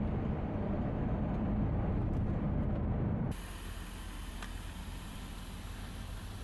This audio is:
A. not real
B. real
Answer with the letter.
B